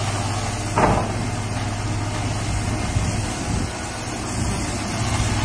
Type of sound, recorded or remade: recorded